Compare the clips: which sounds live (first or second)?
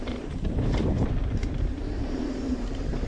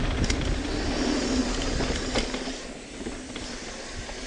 second